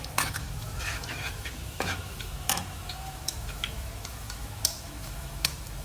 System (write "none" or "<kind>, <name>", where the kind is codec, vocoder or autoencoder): autoencoder, DAC-VAE